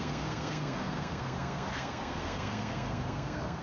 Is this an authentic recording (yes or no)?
no